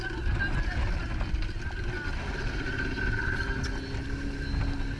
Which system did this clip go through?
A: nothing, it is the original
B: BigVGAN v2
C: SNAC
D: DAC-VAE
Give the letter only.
A